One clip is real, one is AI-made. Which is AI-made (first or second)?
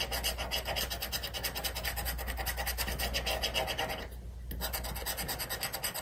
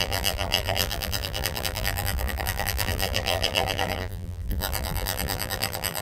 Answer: second